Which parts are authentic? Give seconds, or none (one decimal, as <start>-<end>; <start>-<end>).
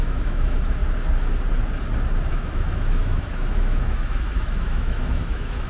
0.8-2.3